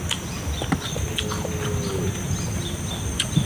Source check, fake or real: fake